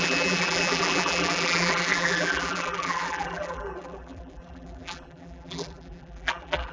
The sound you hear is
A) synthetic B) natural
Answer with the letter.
A